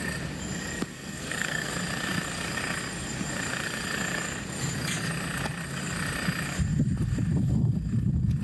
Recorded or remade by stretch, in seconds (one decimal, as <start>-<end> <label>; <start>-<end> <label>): 0.0-0.9 recorded; 0.9-1.7 remade; 1.7-8.4 recorded